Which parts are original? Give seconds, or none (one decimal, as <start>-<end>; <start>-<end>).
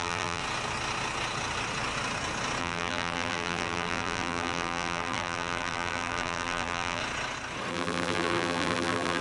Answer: 0.4-2.6; 7.0-7.7